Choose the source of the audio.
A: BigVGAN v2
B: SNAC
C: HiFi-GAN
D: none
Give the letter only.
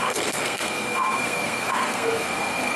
B